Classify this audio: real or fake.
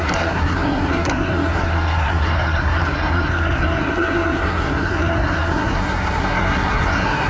fake